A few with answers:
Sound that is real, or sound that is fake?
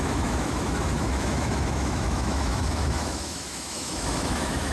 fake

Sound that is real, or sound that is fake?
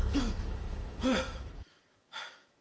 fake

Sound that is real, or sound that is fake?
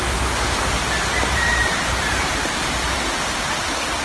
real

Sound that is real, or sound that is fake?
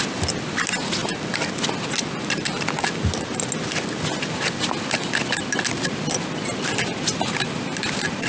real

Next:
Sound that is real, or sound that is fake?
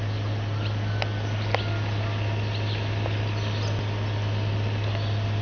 real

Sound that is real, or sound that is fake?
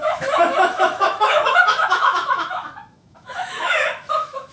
fake